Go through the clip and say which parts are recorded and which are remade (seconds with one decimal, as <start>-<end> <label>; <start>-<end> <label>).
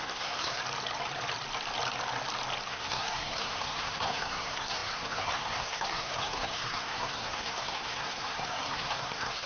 0.0-0.6 remade; 0.6-2.7 recorded; 2.7-9.5 remade